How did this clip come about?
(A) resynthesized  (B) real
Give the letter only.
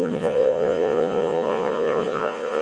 A